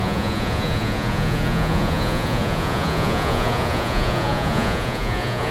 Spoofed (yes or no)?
yes